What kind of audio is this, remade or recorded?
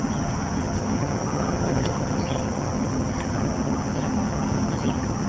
remade